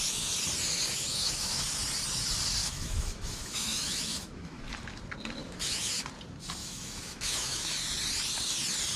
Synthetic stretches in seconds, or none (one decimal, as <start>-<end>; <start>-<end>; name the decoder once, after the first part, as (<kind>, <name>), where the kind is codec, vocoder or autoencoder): 1.1-1.6 (autoencoder, DAC-VAE); 2.6-4.6; 5.4-5.9; 6.6-7.7